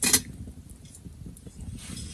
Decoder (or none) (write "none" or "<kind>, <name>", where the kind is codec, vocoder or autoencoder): none